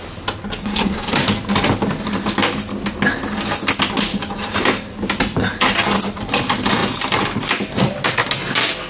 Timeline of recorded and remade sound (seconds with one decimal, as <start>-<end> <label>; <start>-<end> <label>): 0.0-0.6 recorded; 0.6-1.1 remade; 1.1-8.9 recorded